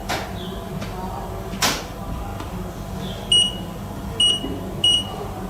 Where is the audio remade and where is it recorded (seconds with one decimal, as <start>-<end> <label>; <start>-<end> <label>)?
0.0-5.5 recorded